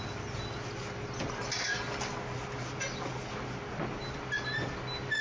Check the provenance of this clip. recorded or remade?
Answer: recorded